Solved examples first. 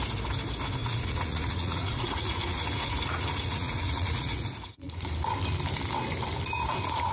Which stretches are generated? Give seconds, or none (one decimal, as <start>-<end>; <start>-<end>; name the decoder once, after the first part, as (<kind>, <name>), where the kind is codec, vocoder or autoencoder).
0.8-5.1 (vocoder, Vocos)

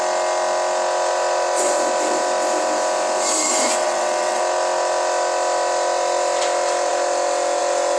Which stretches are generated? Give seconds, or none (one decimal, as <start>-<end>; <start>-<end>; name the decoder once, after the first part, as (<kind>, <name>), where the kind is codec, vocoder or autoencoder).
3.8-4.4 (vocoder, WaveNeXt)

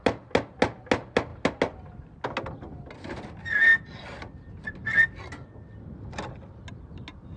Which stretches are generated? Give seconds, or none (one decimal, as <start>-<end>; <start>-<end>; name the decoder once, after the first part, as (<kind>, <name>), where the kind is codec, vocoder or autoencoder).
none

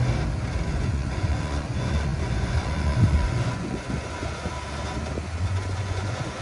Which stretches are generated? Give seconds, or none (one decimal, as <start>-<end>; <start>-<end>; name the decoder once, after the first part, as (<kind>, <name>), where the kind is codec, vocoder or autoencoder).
0.7-4.5 (vocoder, Vocos); 5.4-6.4

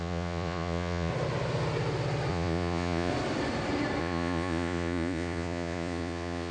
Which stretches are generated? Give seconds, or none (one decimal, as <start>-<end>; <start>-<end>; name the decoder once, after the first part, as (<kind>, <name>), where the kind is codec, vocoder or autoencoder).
0.0-1.1 (vocoder, Vocos); 2.3-3.1; 4.0-6.5